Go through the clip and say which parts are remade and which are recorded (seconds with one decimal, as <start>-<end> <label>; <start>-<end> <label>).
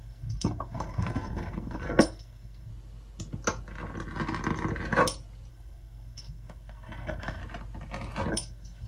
0.0-2.7 remade; 2.7-5.5 recorded; 5.5-7.4 remade; 7.4-8.3 recorded; 8.3-8.9 remade